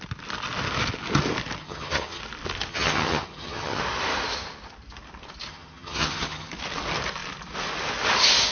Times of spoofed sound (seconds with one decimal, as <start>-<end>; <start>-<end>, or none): 1.6-2.2; 2.7-3.8; 5.5-6.5